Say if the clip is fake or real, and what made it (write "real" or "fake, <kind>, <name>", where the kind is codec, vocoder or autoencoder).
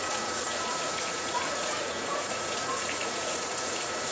fake, vocoder, Vocos